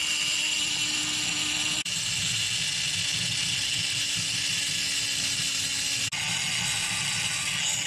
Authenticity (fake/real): real